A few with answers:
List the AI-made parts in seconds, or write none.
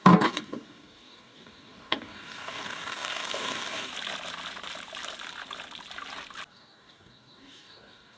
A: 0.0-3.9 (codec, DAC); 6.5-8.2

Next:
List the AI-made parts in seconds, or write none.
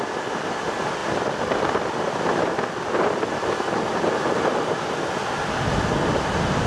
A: none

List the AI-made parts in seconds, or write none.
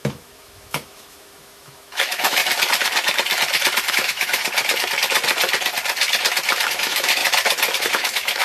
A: 0.0-2.4 (autoencoder, DAC-VAE); 3.9-4.4; 6.7-7.2; 7.8-8.4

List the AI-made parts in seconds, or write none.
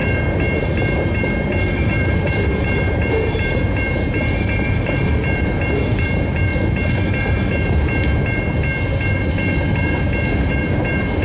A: 0.0-6.5 (vocoder, BigVGAN v2); 10.5-11.2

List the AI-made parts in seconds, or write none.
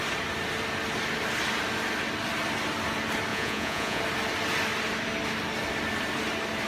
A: 3.3-4.0 (vocoder, Vocos)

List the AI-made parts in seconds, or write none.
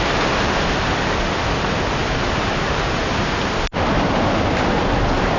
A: none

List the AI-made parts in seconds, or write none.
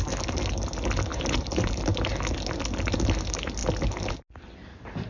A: 1.1-1.9 (vocoder, BigVGAN v2)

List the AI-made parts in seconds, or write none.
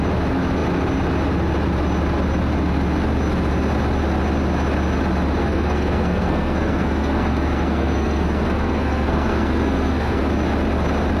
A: 5.4-10.2 (codec, SNAC)